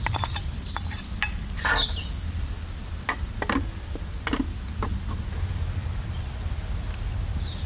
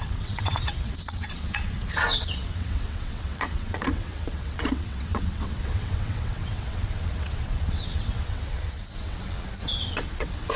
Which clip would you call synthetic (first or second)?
second